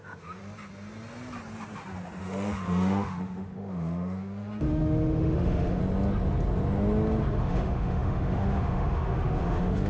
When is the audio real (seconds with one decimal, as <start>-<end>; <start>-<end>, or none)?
0.4-2.2; 5.8-7.3